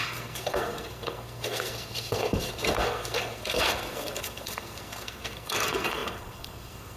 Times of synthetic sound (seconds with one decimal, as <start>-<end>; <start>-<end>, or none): 0.0-7.0